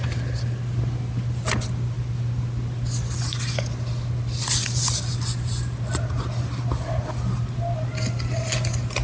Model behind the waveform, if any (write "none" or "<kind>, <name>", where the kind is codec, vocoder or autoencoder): none